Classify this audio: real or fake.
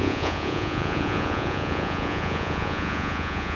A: fake